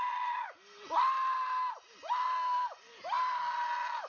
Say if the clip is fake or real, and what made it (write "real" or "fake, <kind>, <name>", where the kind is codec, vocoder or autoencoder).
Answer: real